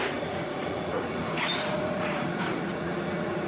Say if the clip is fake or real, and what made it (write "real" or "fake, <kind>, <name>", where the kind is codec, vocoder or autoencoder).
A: fake, vocoder, Vocos